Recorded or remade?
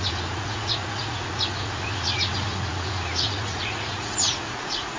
remade